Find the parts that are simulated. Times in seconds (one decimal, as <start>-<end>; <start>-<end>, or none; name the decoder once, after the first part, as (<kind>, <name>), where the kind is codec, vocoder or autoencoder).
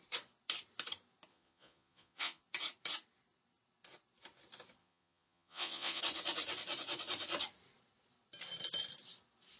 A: 1.3-2.4 (vocoder, Vocos); 4.8-6.0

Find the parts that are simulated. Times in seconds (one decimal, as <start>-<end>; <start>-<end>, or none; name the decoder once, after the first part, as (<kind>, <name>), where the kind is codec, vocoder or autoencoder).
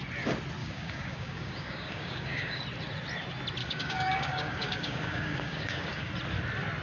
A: 0.6-2.6 (codec, DAC); 3.6-6.1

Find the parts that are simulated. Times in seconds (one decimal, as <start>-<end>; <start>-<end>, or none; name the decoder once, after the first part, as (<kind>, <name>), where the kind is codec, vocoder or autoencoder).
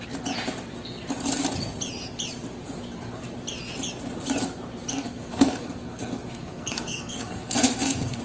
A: 4.9-8.2 (codec, SNAC)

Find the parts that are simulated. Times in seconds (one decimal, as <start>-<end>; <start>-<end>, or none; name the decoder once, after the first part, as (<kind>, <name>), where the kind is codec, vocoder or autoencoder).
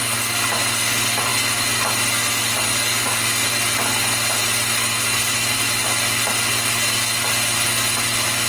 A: none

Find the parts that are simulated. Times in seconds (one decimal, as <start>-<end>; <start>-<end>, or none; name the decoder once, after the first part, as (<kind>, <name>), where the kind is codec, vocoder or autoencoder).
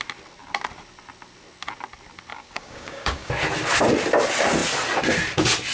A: 2.3-3.3 (codec, DAC)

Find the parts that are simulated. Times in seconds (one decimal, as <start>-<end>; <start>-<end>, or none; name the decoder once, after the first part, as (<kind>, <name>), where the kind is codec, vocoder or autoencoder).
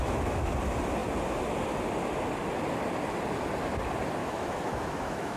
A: 0.0-0.5 (autoencoder, DAC-VAE); 4.2-5.4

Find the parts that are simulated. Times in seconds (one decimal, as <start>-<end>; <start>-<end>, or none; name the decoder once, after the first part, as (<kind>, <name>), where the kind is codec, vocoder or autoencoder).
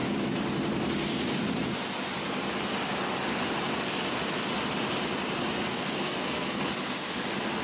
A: 5.7-6.6 (codec, SNAC)